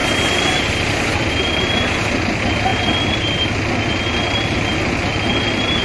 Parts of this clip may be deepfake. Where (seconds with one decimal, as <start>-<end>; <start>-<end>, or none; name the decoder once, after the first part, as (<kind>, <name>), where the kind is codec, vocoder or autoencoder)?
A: 0.0-2.7 (vocoder, BigVGAN v2)